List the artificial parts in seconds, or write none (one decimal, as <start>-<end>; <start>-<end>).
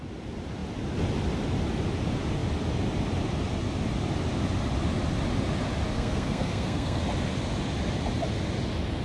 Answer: 5.9-7.0